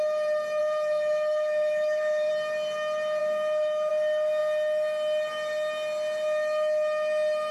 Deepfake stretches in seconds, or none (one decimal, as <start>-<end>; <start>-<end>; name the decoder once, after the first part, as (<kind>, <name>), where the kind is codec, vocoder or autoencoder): 0.6-2.3 (codec, DAC); 3.2-3.9